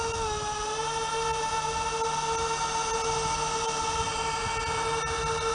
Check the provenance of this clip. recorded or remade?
recorded